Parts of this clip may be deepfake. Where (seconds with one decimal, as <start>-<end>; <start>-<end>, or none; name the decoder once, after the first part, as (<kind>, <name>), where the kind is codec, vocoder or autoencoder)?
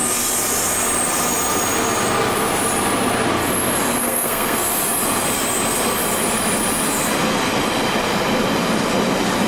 4.0-4.6 (codec, SNAC)